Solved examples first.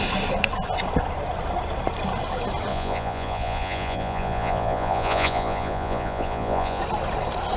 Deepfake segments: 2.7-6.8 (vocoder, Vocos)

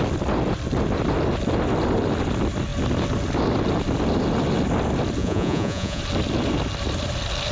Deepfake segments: 5.2-6.0 (vocoder, Vocos)

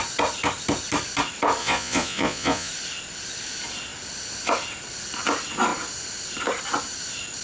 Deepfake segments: 1.6-2.7 (vocoder, Vocos)

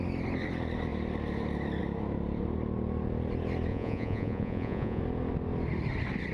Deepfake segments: 3.7-5.0 (vocoder, Vocos)

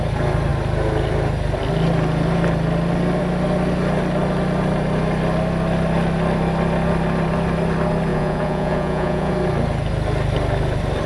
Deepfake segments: 8.1-9.3 (vocoder, Vocos)

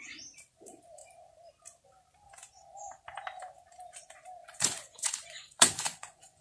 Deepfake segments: 4.4-6.4 (vocoder, Vocos)

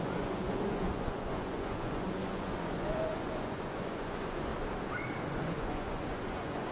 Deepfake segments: 0.0-4.5 (vocoder, Vocos); 5.2-6.7

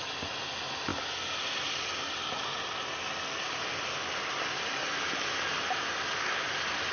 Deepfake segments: none